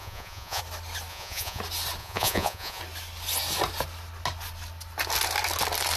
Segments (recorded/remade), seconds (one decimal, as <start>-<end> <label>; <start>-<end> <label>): 0.0-0.6 remade; 0.6-1.1 recorded; 1.1-1.6 remade; 1.6-2.0 recorded; 2.0-2.8 remade; 2.8-6.0 recorded